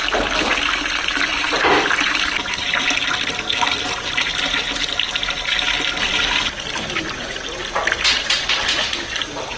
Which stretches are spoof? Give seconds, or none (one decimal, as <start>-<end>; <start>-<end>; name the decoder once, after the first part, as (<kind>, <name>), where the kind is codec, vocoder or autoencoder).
none